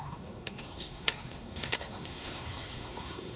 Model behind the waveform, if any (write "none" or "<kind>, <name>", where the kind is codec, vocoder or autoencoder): codec, SNAC